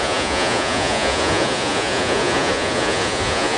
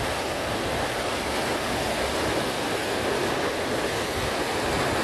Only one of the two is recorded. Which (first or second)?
second